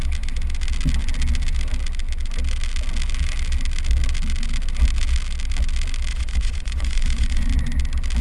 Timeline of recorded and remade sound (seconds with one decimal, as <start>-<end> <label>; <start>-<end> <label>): 0.0-6.1 recorded; 6.1-7.5 remade; 7.5-8.2 recorded